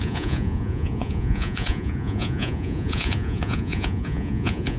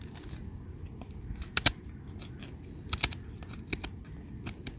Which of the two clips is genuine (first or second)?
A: second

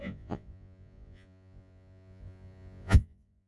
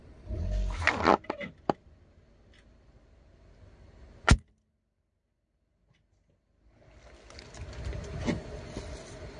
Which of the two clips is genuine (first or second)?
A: second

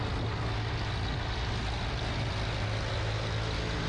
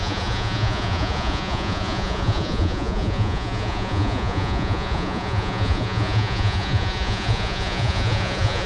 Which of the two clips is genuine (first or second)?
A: first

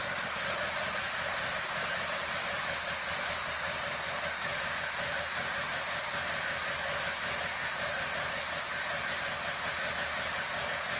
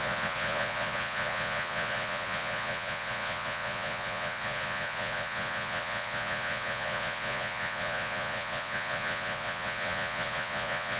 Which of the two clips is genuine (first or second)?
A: first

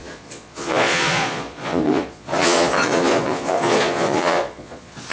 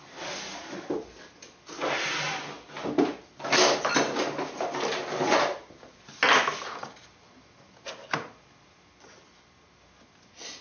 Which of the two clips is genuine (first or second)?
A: second